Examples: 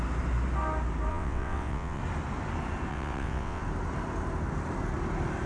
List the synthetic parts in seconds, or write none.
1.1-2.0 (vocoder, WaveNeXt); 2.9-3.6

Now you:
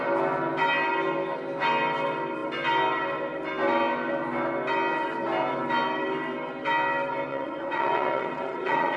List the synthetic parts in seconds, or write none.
7.3-9.0 (vocoder, WaveNeXt)